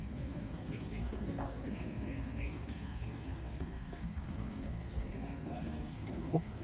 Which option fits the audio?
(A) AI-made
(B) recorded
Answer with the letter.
A